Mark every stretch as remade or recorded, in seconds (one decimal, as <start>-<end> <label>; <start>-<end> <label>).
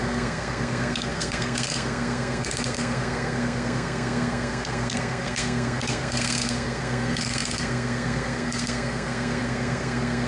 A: 0.0-10.3 remade